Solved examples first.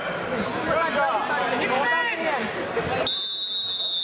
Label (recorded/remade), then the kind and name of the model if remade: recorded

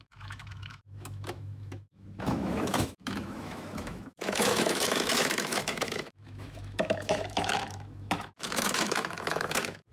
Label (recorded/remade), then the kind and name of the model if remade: remade, autoencoder, DAC-VAE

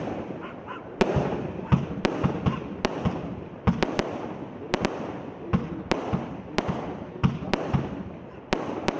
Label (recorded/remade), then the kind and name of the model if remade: recorded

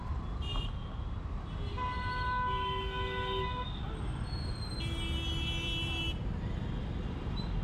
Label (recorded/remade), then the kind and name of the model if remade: recorded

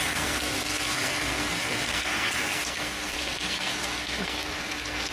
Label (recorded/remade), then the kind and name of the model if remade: remade, codec, SNAC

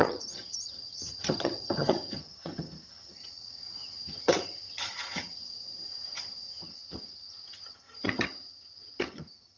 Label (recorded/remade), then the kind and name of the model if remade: remade, vocoder, HiFi-GAN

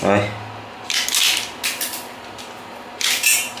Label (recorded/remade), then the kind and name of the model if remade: recorded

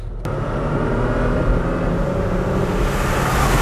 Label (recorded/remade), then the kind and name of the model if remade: recorded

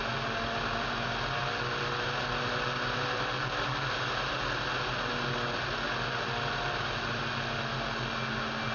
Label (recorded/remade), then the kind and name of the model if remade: recorded